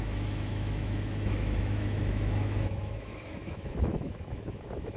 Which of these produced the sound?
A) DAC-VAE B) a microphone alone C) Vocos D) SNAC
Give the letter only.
A